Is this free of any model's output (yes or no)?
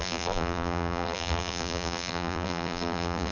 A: no